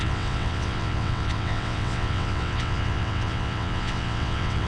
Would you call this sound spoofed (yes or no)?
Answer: yes